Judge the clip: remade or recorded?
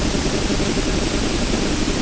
recorded